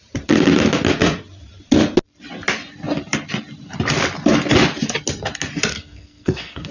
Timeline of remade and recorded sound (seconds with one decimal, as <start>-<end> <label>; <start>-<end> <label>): 0.0-5.7 recorded; 5.7-6.7 remade